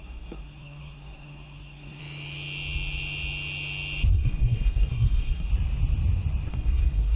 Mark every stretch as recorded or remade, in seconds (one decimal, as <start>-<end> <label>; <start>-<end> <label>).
0.0-2.0 remade; 2.0-4.1 recorded; 4.1-5.5 remade; 5.5-6.5 recorded; 6.5-7.2 remade